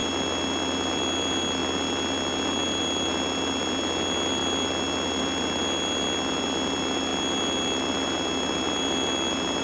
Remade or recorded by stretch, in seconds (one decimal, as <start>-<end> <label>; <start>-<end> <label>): 0.0-9.6 recorded